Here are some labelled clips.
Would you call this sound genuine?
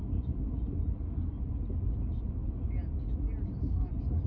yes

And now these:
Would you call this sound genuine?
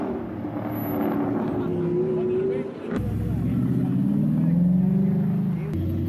yes